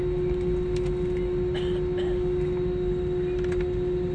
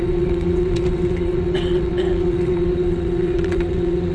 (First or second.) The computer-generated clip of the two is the second